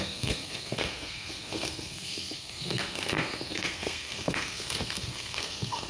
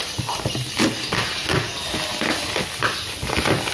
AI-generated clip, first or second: first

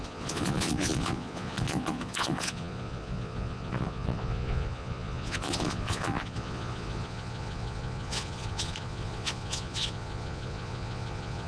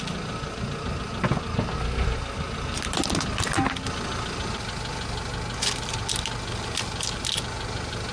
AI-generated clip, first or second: first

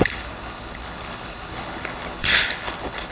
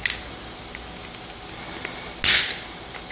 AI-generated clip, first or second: first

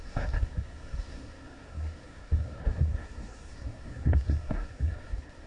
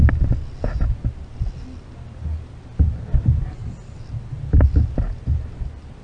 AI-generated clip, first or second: first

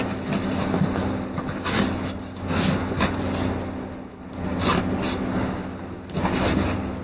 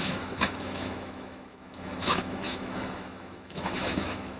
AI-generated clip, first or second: second